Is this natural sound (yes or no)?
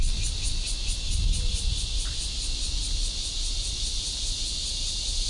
yes